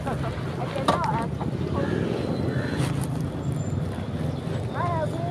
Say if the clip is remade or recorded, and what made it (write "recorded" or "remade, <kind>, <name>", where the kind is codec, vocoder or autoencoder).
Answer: recorded